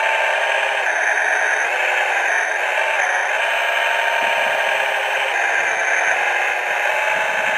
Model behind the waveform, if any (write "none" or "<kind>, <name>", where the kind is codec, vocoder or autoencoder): none